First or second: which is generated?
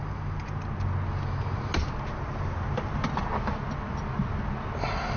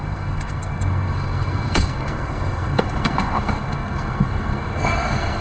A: second